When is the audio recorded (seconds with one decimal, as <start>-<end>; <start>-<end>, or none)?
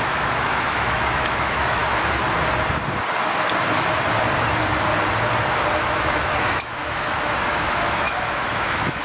1.8-5.8